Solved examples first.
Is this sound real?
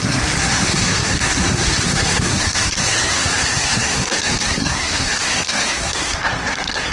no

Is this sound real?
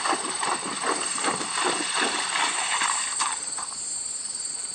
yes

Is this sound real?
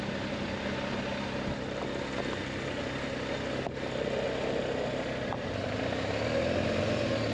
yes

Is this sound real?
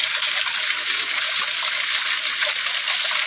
yes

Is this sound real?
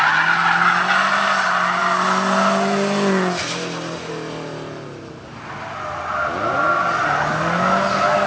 yes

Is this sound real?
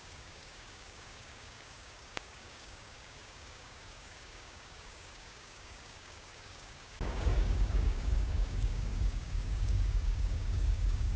no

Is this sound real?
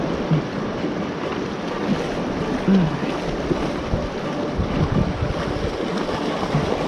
yes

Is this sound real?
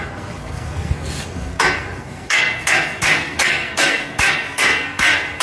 no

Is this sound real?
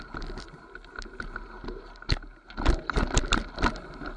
yes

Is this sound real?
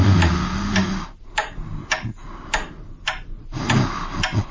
yes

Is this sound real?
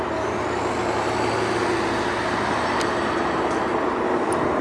yes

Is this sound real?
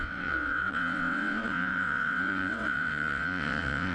no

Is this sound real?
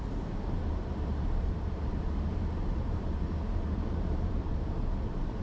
no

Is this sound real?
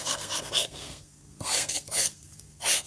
no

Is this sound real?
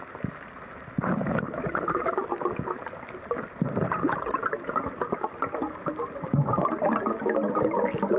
yes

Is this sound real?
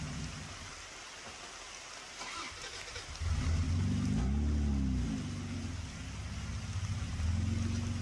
yes